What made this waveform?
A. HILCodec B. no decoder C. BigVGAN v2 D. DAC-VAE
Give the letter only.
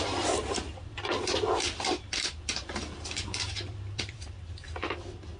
C